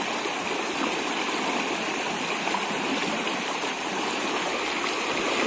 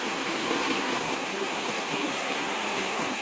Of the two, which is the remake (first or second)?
second